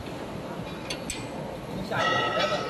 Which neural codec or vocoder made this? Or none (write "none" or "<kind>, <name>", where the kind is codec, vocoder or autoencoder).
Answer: none